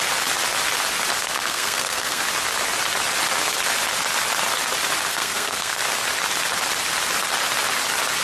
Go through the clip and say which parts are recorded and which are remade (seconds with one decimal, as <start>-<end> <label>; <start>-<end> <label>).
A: 0.0-1.2 recorded; 1.2-2.2 remade; 2.2-5.1 recorded; 5.1-5.8 remade; 5.8-8.2 recorded